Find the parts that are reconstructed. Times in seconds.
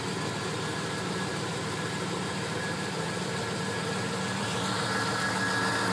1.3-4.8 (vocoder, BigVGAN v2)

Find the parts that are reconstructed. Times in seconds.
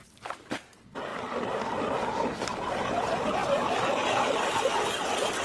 none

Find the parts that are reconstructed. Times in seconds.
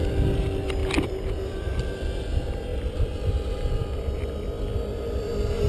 0.8-1.7 (vocoder, BigVGAN v2); 2.7-3.3